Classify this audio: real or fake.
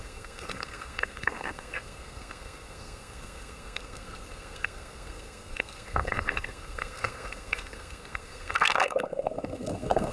fake